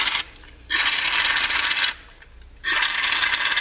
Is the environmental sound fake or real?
real